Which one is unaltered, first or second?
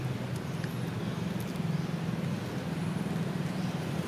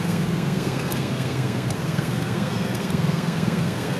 first